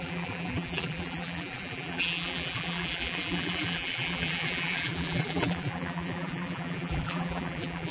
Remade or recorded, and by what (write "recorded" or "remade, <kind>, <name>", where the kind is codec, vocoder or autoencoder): remade, vocoder, BigVGAN v2